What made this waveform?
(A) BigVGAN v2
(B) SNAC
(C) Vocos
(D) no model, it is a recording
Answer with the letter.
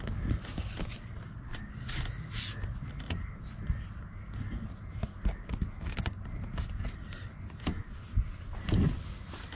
D